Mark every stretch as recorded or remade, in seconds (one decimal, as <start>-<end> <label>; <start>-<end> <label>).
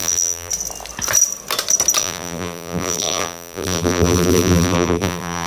0.0-0.5 remade; 0.5-2.0 recorded; 2.0-5.5 remade